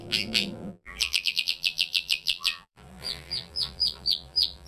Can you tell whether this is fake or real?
fake